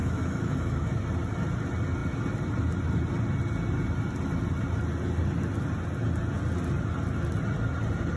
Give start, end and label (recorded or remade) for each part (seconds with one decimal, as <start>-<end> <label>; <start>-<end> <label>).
0.0-1.0 remade; 1.0-8.2 recorded